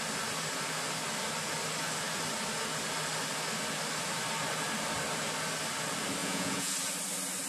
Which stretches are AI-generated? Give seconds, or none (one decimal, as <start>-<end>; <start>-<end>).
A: 6.2-6.7